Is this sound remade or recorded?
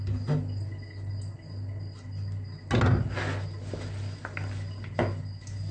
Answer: recorded